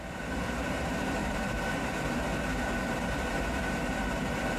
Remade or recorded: remade